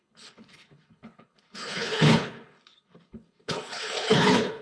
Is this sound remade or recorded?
remade